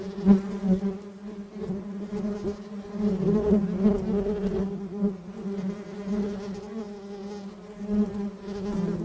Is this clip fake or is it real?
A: real